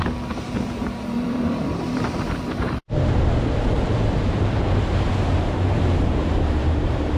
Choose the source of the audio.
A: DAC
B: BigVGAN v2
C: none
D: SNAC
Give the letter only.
B